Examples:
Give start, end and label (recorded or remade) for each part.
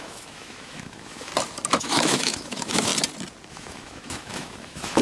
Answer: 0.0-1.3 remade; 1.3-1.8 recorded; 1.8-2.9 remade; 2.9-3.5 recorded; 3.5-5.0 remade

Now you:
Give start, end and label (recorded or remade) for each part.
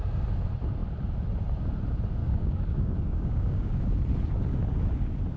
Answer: 0.0-2.2 recorded; 2.2-3.8 remade; 3.8-5.4 recorded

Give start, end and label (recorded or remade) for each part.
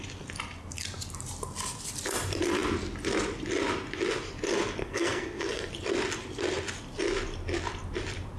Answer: 0.0-4.8 recorded; 4.8-5.7 remade; 5.7-8.4 recorded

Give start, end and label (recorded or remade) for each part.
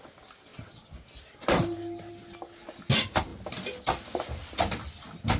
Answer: 0.0-5.4 recorded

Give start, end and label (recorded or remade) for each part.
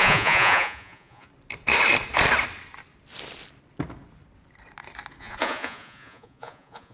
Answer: 0.0-1.3 remade; 1.3-5.2 recorded; 5.2-6.9 remade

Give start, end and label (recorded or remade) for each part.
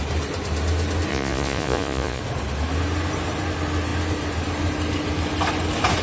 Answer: 0.0-1.1 recorded; 1.1-2.2 remade; 2.2-6.0 recorded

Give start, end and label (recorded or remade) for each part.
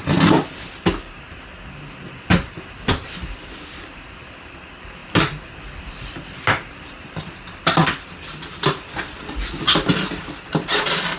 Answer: 0.0-2.2 recorded; 2.2-5.0 remade; 5.0-5.8 recorded; 5.8-7.8 remade; 7.8-8.7 recorded; 8.7-11.2 remade